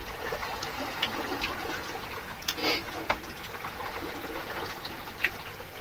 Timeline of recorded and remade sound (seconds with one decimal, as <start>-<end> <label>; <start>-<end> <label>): 0.0-5.8 remade